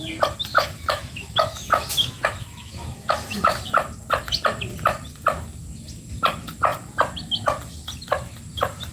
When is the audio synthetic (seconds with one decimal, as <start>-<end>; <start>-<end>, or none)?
0.5-3.7